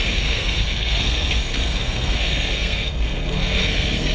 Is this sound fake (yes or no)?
yes